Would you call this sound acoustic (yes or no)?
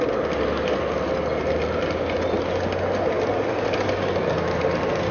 yes